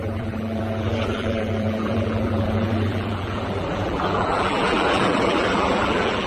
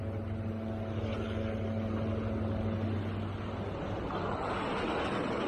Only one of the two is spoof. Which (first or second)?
first